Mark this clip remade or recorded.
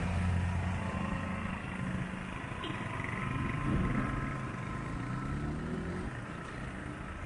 recorded